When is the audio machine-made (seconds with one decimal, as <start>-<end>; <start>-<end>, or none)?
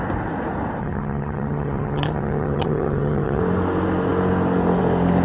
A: 0.8-3.4